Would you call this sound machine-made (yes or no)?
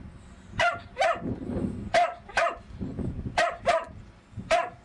no